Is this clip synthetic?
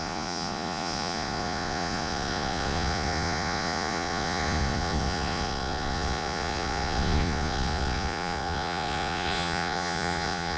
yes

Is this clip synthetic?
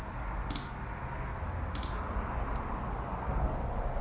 no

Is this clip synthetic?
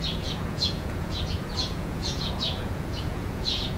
yes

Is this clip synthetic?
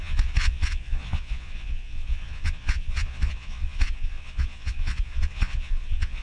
yes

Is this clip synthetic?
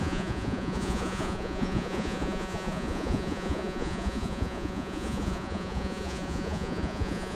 yes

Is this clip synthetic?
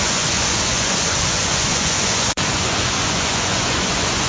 yes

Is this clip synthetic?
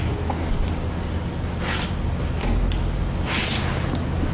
no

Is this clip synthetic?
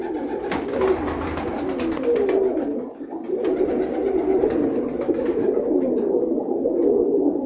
no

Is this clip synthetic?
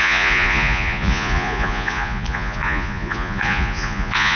yes